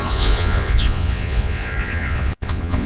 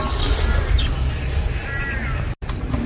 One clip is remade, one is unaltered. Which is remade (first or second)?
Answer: first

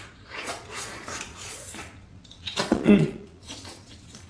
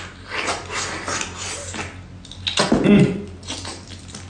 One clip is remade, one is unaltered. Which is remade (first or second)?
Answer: first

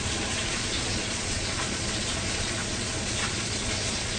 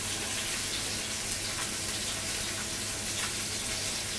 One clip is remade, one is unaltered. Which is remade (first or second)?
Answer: first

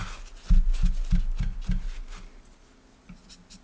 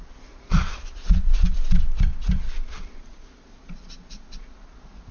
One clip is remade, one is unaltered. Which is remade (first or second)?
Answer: second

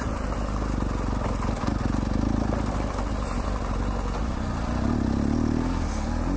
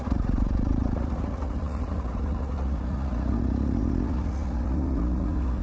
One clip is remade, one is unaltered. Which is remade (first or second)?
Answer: second